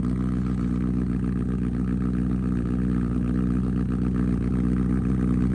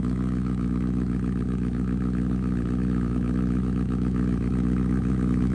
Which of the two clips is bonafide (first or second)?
first